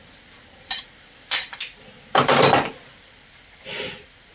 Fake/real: real